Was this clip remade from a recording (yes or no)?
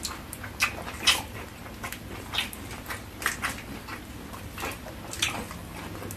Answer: no